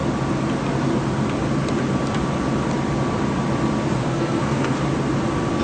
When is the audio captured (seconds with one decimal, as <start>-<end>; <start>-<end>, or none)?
0.0-4.0; 4.7-5.6